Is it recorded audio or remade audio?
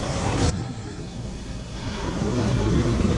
remade